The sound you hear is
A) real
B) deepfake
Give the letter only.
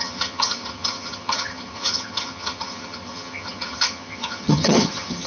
B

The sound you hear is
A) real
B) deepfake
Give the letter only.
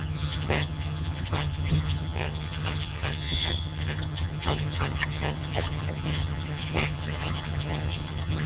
B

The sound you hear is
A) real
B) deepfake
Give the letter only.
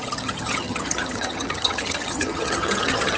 B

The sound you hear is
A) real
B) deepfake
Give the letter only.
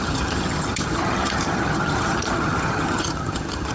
B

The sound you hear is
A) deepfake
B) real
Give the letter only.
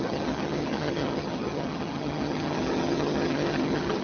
A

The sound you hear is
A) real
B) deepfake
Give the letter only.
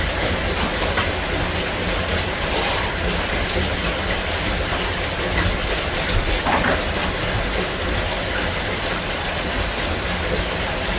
A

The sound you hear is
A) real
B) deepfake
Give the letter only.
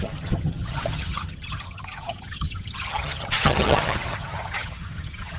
B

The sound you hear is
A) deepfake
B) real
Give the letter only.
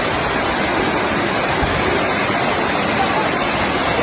B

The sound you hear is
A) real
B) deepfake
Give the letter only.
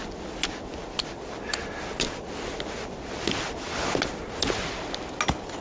A